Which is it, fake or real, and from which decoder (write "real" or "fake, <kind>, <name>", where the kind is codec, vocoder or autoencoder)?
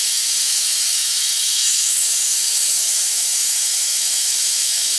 fake, autoencoder, DAC-VAE